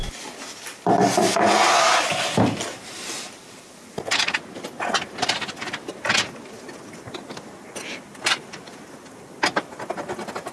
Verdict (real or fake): real